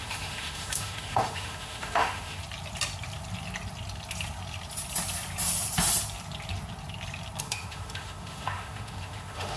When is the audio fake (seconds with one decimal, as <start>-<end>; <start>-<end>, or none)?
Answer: 0.0-2.4; 7.4-9.6